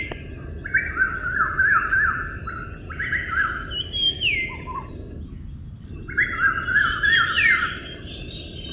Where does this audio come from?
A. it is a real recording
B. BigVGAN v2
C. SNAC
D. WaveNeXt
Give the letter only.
A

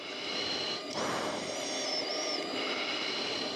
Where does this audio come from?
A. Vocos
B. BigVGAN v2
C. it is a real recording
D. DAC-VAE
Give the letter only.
B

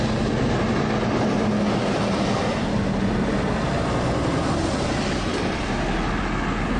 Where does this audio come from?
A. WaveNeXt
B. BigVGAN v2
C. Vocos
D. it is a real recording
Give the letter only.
D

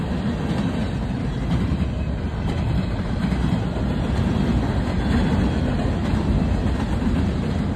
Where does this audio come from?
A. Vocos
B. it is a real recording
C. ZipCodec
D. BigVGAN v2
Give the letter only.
B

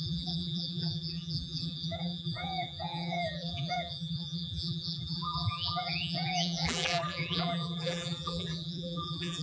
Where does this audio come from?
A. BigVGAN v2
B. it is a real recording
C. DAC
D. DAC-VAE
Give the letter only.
A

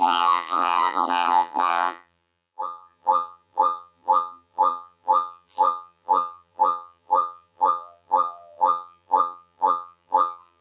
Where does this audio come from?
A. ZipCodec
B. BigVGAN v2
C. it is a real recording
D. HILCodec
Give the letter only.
B